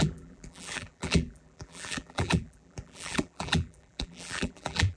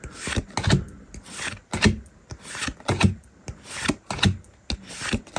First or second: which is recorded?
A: second